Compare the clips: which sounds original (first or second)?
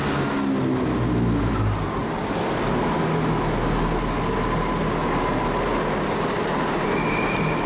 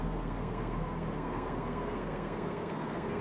first